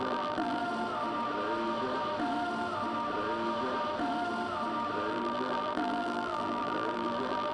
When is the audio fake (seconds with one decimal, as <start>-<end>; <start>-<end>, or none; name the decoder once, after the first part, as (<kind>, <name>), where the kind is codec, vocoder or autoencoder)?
0.0-0.6 (vocoder, BigVGAN v2); 5.1-7.5